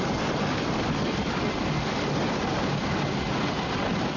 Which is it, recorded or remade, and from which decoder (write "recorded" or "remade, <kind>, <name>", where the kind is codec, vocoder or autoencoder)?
recorded